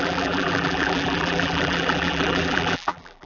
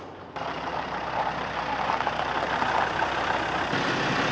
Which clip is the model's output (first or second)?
first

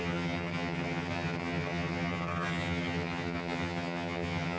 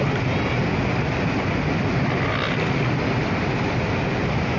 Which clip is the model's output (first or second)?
first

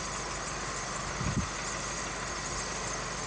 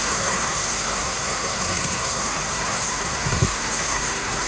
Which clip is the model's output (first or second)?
second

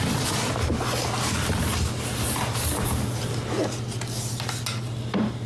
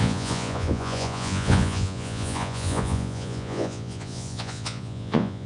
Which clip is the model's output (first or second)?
second